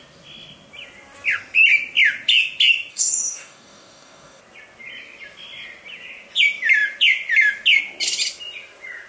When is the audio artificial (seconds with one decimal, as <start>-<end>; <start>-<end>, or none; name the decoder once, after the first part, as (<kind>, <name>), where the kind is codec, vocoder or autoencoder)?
2.9-4.4 (codec, DAC)